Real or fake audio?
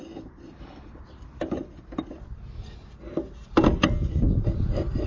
real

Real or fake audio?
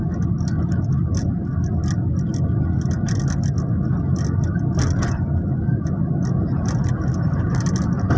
real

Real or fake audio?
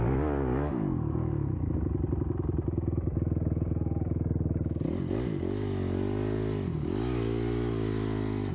real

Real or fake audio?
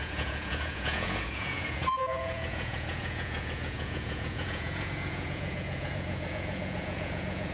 fake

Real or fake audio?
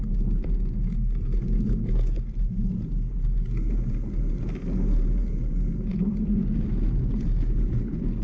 real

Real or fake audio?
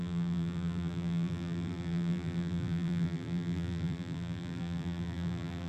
fake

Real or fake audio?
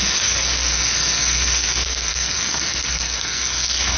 fake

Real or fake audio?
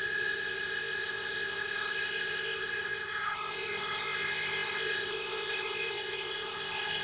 fake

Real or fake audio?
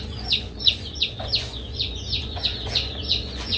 fake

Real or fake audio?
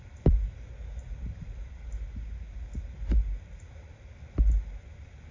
real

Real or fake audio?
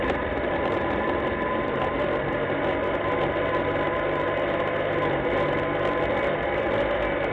real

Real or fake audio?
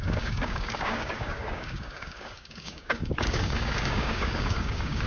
fake